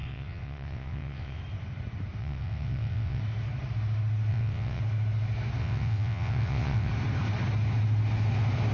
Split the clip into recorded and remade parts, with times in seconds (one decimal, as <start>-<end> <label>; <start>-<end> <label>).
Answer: 0.0-1.4 remade; 1.4-2.2 recorded; 2.2-3.2 remade; 3.2-4.3 recorded; 4.3-4.8 remade; 4.8-5.6 recorded; 5.6-6.9 remade; 6.9-8.7 recorded